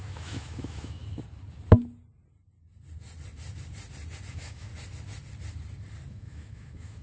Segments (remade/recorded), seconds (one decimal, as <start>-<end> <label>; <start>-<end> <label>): 0.0-1.0 remade; 1.0-4.3 recorded; 4.3-4.7 remade; 4.7-6.1 recorded; 6.1-7.0 remade